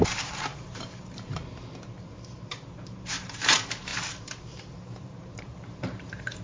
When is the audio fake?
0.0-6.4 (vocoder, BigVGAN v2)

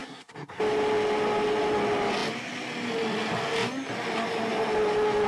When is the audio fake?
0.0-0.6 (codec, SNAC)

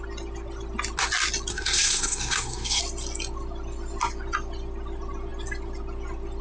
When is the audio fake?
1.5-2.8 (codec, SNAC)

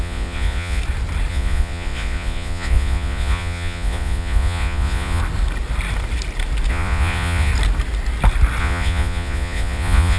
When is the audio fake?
0.0-0.8 (vocoder, Vocos); 1.3-5.2; 6.7-7.5; 8.6-10.2

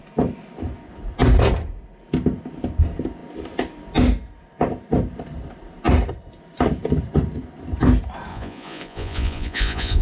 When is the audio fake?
8.3-10.0 (vocoder, Vocos)

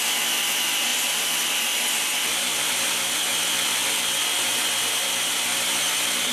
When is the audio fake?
0.9-2.7 (vocoder, BigVGAN v2); 3.3-4.2

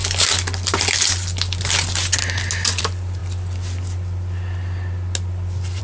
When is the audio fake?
none

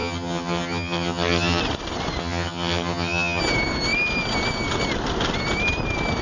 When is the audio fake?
0.0-1.6 (vocoder, HiFi-GAN); 2.2-3.4